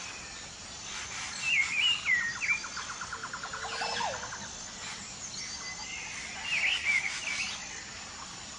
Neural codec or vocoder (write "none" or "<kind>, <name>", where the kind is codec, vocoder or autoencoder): none